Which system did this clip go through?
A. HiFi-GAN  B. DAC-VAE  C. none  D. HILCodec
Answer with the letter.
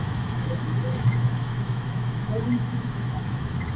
B